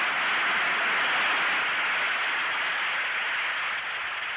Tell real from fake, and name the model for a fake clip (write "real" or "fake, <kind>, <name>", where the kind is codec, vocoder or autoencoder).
real